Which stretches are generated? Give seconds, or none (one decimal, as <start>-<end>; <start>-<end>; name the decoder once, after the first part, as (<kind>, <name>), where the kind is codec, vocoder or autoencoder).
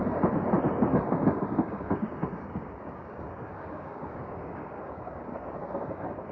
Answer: 0.7-6.3 (codec, DAC)